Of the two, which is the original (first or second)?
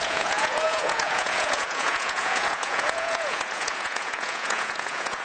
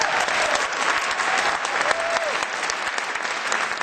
second